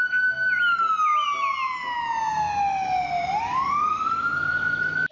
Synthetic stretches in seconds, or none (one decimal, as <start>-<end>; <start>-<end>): none